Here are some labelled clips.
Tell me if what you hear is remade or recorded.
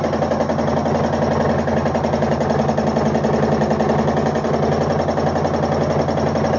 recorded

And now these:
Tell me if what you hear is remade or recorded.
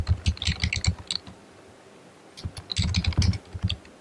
recorded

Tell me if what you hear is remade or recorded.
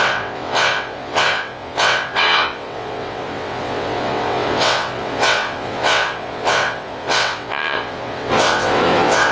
remade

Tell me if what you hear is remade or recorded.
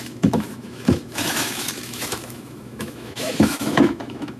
remade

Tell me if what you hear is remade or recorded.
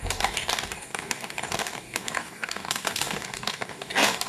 remade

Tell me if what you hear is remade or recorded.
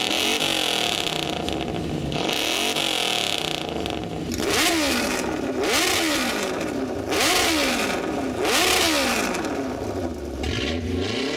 recorded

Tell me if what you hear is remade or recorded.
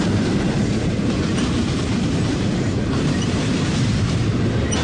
remade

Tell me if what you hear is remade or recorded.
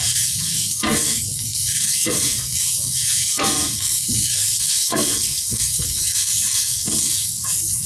remade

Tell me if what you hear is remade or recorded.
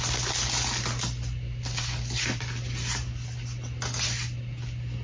recorded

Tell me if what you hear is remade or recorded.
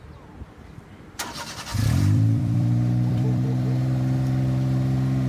remade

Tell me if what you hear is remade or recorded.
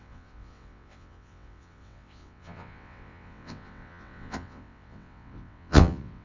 remade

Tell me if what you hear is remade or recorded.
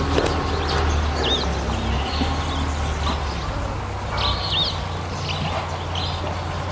recorded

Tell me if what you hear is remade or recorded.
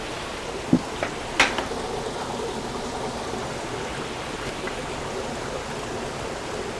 recorded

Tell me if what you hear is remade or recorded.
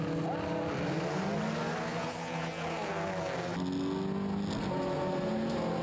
recorded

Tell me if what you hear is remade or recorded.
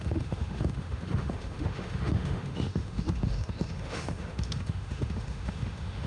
remade